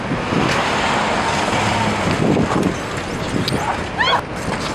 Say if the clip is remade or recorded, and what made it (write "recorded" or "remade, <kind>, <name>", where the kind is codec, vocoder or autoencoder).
recorded